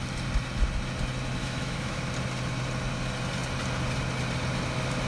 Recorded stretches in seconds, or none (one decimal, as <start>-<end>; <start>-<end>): 0.0-1.4; 2.0-5.1